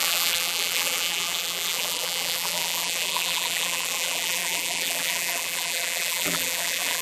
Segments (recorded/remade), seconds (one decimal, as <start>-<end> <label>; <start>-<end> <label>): 0.0-7.0 remade